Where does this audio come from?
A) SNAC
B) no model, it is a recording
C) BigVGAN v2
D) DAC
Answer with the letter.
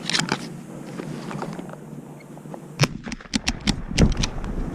B